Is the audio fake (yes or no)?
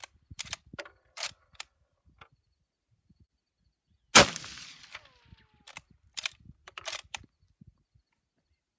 no